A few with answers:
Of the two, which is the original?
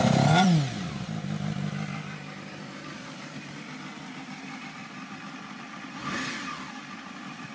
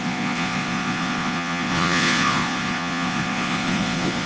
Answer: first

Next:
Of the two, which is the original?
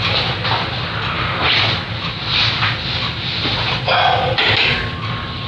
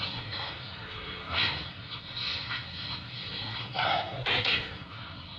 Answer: first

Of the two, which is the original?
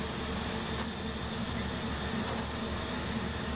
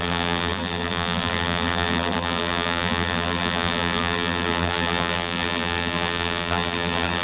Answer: first